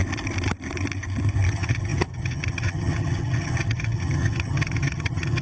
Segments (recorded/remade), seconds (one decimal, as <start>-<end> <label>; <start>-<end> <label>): 0.0-1.5 recorded; 1.5-5.4 remade